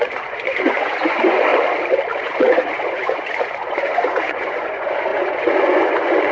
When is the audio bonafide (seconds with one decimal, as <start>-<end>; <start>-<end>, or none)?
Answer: 1.5-2.2